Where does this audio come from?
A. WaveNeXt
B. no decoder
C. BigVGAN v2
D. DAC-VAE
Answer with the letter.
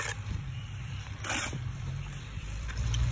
C